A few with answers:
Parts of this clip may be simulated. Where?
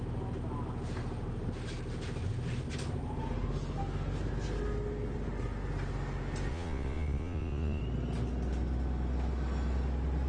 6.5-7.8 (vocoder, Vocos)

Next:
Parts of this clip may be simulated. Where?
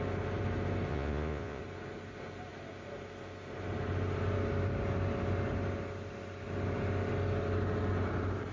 0.9-1.6 (vocoder, Vocos)